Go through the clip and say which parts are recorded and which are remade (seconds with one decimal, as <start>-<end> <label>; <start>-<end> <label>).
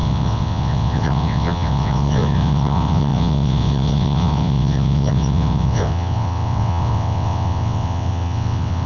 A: 0.0-8.9 remade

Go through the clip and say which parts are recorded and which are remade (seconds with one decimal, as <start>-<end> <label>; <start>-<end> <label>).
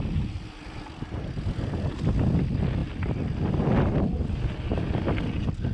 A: 0.0-5.7 recorded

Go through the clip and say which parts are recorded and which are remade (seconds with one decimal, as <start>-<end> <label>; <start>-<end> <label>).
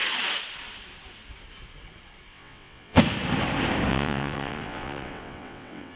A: 0.0-2.3 recorded; 2.3-3.0 remade; 3.0-3.9 recorded; 3.9-6.0 remade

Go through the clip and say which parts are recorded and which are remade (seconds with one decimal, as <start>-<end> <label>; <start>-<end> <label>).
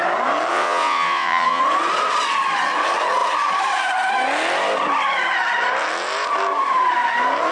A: 0.0-0.5 recorded; 0.5-1.6 remade; 1.6-7.5 recorded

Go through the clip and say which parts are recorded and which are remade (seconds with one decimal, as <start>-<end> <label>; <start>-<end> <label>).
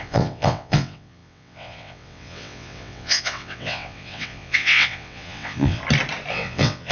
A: 0.0-5.8 remade; 5.8-6.3 recorded; 6.3-6.9 remade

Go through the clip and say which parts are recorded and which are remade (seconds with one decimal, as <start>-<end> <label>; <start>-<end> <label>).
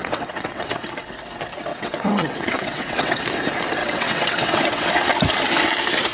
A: 0.0-0.9 remade; 0.9-1.7 recorded; 1.7-3.2 remade; 3.2-3.8 recorded; 3.8-4.9 remade; 4.9-6.1 recorded